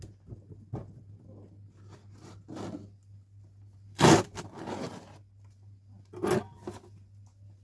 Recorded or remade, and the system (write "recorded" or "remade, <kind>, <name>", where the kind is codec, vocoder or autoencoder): recorded